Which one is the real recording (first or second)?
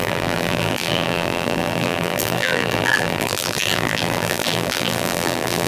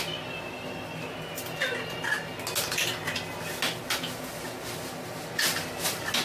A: second